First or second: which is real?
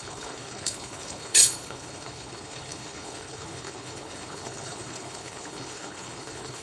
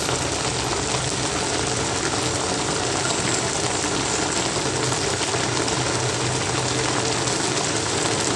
second